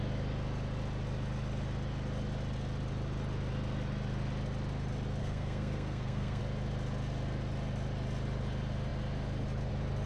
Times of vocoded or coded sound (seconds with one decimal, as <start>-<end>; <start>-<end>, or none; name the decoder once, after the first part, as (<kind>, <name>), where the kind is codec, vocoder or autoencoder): 5.2-6.4 (codec, SNAC)